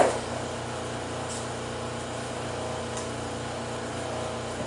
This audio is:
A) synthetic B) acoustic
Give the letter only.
B